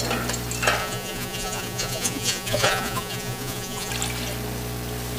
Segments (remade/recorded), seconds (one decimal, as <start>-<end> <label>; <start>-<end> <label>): 0.0-0.8 recorded; 0.8-3.9 remade; 3.9-5.2 recorded